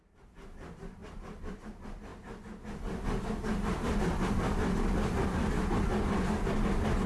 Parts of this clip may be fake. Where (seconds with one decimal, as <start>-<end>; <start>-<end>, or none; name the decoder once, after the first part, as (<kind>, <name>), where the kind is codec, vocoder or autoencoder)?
none